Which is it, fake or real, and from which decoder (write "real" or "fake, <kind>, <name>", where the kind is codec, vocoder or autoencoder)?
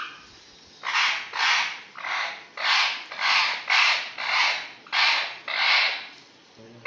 real